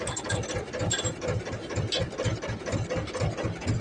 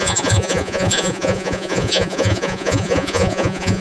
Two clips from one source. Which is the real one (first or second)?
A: first